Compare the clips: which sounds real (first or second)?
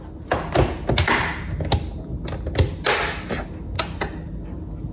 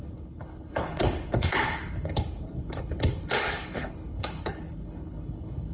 first